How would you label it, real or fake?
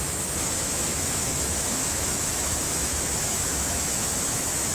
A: fake